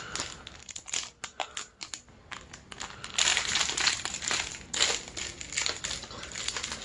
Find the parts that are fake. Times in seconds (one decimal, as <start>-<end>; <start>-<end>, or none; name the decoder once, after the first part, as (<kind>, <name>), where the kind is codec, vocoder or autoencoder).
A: 3.3-4.5 (vocoder, BigVGAN v2)